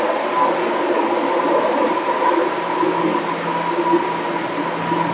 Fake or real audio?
real